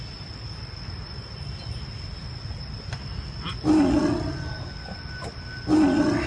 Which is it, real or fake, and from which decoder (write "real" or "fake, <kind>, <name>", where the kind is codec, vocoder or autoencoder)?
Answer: real